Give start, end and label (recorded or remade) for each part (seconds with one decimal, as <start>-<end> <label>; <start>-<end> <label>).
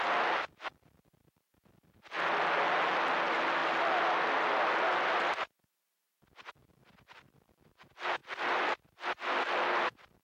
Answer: 0.0-10.2 recorded